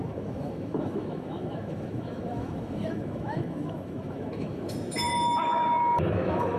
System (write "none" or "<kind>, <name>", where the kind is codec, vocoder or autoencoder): autoencoder, DAC-VAE